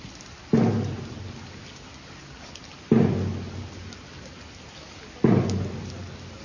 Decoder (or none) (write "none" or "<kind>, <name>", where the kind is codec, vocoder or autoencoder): none